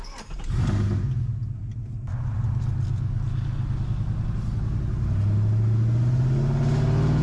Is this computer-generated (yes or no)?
no